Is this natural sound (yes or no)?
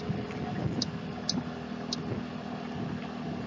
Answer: yes